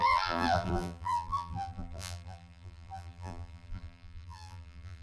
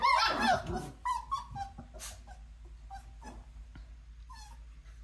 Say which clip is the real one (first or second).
second